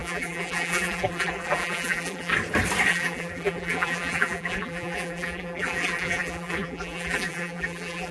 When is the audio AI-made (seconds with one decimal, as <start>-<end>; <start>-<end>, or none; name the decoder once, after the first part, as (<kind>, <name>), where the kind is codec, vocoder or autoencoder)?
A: 0.0-2.3 (vocoder, BigVGAN v2); 2.9-8.1